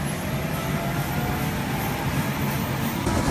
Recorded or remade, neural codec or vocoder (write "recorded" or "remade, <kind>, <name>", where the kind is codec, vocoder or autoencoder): recorded